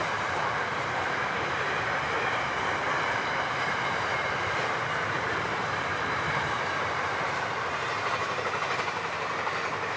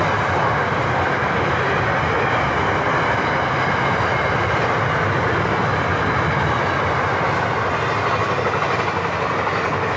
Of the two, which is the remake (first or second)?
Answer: first